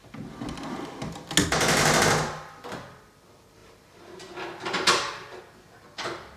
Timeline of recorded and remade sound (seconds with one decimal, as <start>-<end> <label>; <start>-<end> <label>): 0.0-3.6 recorded; 3.6-5.4 remade; 5.4-6.4 recorded